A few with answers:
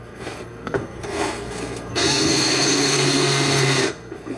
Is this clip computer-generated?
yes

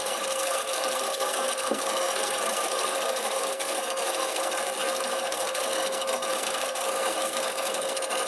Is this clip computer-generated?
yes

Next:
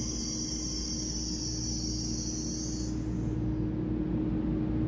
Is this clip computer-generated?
no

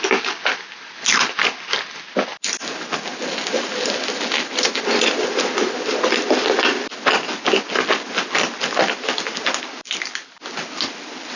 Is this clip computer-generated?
no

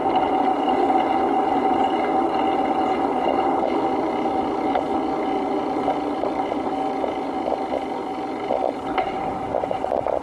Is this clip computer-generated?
no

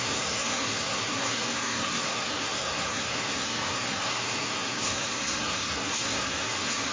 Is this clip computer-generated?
yes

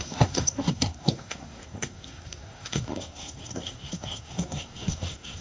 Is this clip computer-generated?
yes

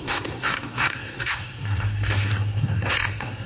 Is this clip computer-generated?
yes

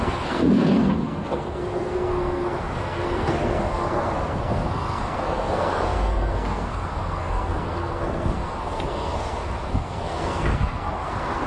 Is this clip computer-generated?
yes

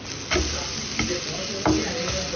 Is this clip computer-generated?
no